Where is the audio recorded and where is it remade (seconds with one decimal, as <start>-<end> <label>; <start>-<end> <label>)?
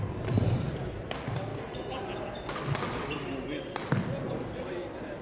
0.0-5.2 recorded